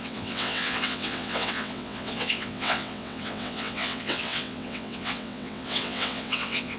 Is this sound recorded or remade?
remade